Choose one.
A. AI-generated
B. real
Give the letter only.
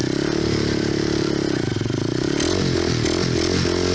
B